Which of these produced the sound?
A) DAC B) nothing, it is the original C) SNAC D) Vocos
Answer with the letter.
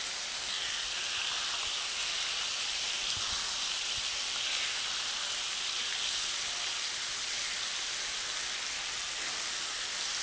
B